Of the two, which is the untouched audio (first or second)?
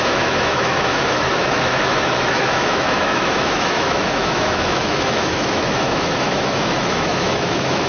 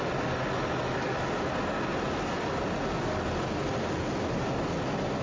second